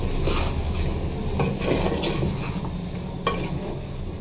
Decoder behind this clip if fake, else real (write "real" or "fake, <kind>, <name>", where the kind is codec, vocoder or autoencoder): real